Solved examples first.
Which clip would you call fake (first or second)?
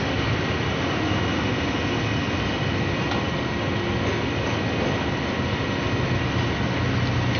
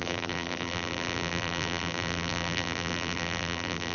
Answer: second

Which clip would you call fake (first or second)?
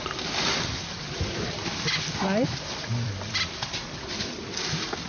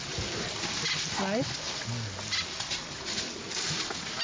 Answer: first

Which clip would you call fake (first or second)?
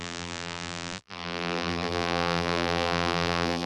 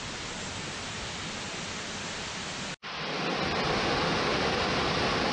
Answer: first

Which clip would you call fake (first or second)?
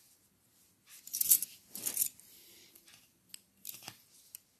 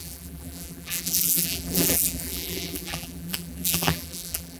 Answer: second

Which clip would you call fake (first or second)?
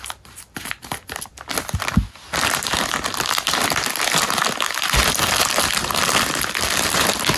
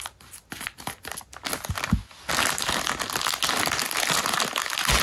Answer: first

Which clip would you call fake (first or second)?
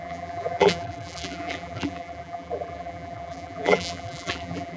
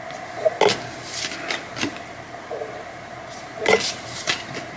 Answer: first